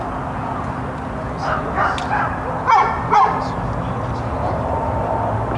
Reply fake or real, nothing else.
real